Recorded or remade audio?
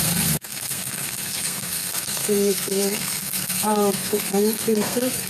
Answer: remade